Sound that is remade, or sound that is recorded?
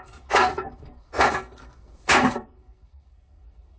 remade